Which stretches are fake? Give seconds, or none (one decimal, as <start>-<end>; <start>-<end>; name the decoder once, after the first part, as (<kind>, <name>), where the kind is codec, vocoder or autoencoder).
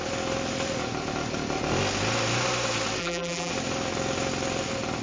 3.0-3.5 (vocoder, BigVGAN v2)